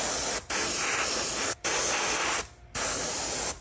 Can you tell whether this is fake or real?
real